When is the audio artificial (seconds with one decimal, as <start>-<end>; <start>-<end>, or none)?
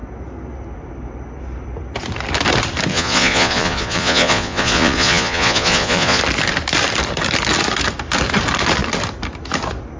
2.9-6.2